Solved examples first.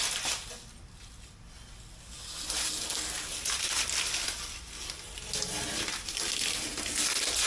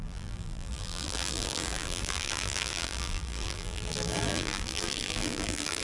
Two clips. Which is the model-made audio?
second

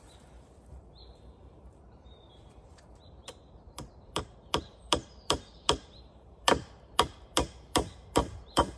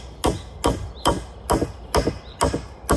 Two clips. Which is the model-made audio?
first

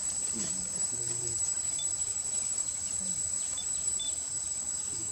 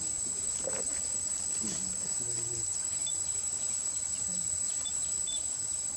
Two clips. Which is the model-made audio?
first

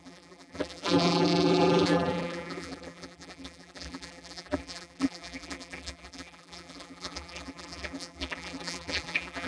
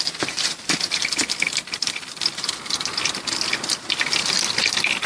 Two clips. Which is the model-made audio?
first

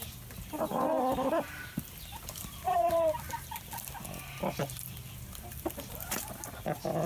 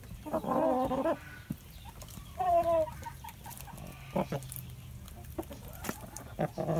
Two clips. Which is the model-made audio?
first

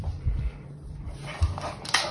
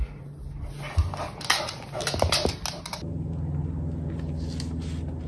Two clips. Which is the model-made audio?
first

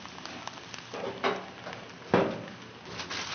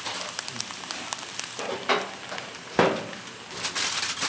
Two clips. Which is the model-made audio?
second